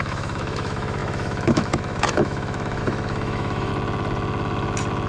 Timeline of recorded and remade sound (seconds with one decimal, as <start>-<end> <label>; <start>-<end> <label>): 0.0-3.7 remade; 3.7-5.1 recorded